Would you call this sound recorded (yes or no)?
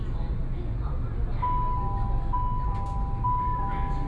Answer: yes